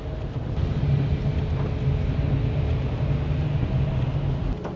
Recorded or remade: recorded